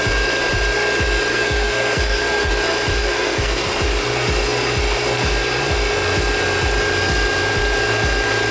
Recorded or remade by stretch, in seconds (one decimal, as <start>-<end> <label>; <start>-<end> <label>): 0.0-1.3 recorded; 1.3-2.5 remade; 2.5-3.0 recorded; 3.0-3.7 remade; 3.7-8.5 recorded